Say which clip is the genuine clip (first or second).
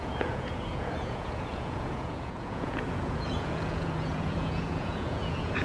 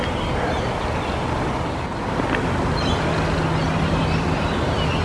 second